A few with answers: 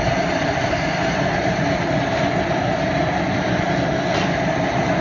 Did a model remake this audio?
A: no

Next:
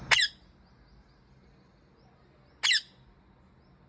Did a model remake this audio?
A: no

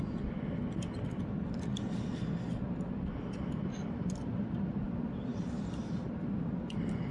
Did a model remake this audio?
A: no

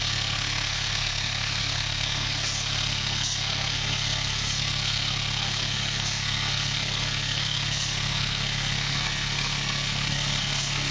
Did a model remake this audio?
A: yes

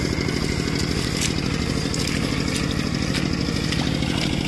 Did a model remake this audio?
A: no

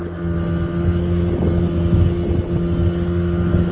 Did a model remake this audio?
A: no